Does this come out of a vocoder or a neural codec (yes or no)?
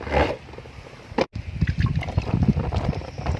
no